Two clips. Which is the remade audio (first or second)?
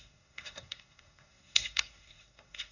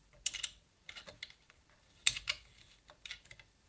first